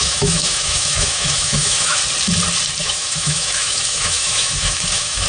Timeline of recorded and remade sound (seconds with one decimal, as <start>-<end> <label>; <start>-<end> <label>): 0.0-2.0 remade; 2.0-2.8 recorded; 2.8-5.3 remade